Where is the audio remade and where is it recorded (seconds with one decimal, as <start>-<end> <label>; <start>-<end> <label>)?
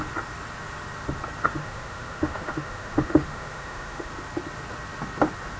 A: 0.0-1.6 recorded; 1.6-4.1 remade; 4.1-5.6 recorded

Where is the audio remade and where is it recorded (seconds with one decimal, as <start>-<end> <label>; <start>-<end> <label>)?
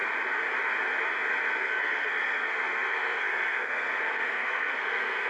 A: 0.0-1.5 recorded; 1.5-5.3 remade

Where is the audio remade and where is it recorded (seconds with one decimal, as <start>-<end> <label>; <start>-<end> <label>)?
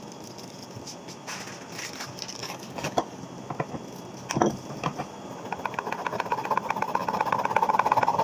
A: 0.0-2.4 recorded; 2.4-3.2 remade; 3.2-8.2 recorded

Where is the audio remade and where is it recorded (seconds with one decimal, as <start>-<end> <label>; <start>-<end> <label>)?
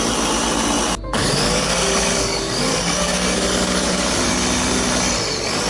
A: 0.0-1.2 recorded; 1.2-4.3 remade; 4.3-5.7 recorded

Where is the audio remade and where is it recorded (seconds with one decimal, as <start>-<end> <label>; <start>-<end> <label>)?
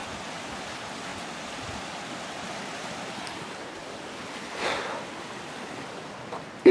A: 0.0-6.7 recorded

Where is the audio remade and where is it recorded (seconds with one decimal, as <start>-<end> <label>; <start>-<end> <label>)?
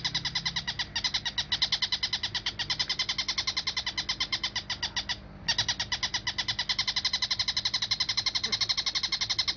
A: 0.0-9.6 recorded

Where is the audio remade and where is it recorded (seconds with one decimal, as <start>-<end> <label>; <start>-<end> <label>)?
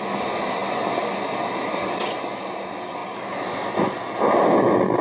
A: 0.0-5.0 recorded